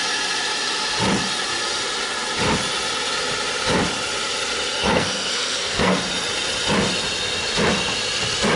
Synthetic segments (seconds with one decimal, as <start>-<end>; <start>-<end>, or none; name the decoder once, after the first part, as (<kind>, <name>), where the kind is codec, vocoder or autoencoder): 4.8-6.0 (codec, SNAC)